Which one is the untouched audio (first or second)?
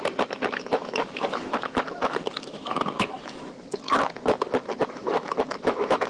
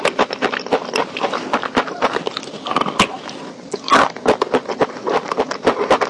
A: second